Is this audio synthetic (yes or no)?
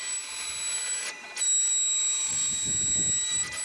no